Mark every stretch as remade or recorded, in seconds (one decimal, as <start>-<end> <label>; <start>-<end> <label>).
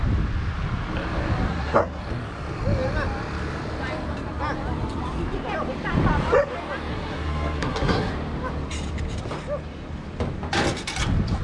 0.0-1.5 recorded; 1.5-2.0 remade; 2.0-6.9 recorded; 6.9-8.1 remade; 8.1-11.4 recorded